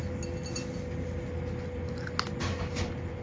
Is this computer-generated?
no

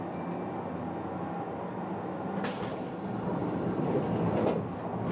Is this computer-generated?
no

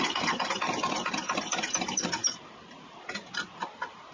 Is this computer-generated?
no